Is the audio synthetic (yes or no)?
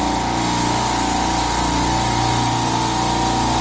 no